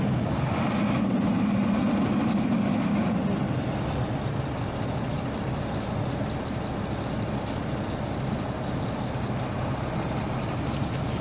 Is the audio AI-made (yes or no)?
no